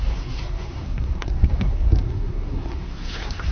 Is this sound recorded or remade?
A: remade